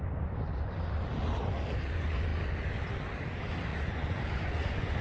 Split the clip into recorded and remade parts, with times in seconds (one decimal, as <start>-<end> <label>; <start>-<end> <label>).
0.0-3.7 recorded; 3.7-5.0 remade